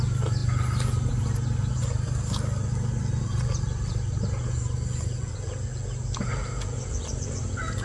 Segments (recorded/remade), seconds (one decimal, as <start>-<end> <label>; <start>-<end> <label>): 0.0-7.8 recorded